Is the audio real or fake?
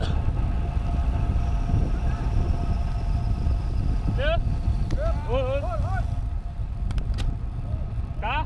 real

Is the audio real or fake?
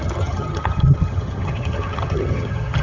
fake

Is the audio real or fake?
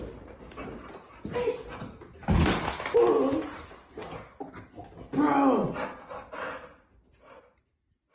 real